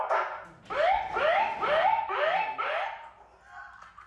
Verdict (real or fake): real